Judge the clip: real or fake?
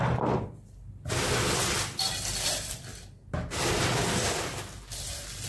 real